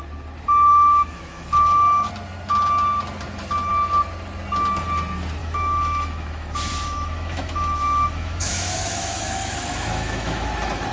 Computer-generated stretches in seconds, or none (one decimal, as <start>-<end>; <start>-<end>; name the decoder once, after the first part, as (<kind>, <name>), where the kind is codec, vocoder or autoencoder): 0.7-2.1 (autoencoder, DAC-VAE); 5.4-10.5